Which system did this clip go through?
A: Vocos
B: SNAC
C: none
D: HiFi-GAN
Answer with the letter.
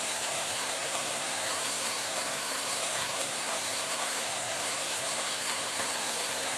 B